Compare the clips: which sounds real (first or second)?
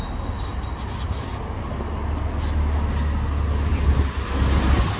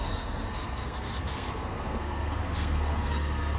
first